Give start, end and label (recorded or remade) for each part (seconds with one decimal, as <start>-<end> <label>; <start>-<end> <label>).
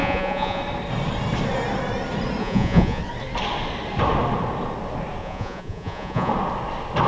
0.0-0.6 remade; 0.6-2.4 recorded; 2.4-3.0 remade; 3.0-5.2 recorded; 5.2-6.3 remade; 6.3-7.1 recorded